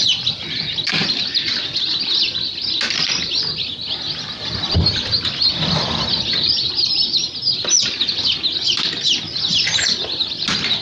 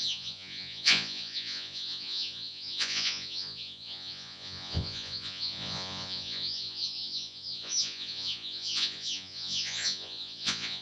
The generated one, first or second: second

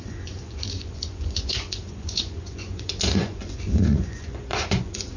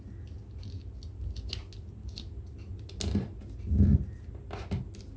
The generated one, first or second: first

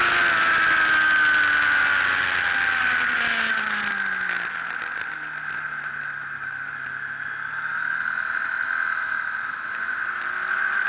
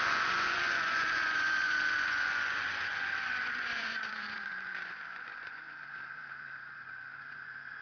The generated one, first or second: second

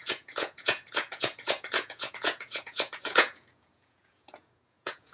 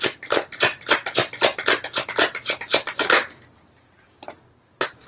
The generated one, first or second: first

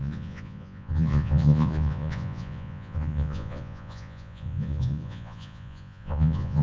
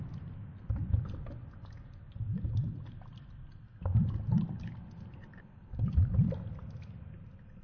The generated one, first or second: first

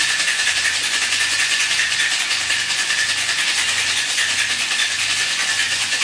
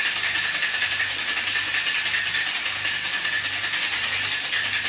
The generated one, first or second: first